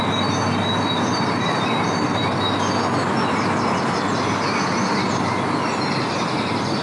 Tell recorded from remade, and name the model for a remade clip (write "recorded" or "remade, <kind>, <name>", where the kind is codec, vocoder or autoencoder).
recorded